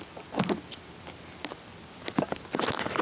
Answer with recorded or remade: recorded